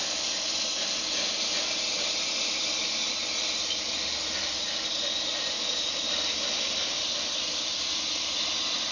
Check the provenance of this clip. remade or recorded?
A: remade